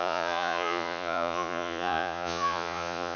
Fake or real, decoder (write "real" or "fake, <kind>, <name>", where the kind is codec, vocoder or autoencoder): fake, vocoder, Vocos